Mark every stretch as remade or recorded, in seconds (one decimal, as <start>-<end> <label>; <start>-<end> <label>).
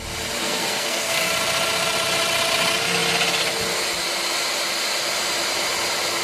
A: 0.0-0.4 recorded; 0.4-1.3 remade; 1.3-6.2 recorded